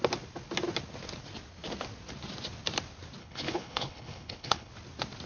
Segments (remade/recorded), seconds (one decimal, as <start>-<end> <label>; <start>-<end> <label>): 0.0-3.2 recorded; 3.2-4.7 remade; 4.7-5.3 recorded